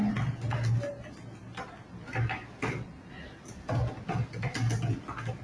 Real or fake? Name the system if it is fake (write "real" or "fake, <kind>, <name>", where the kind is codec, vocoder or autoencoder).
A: real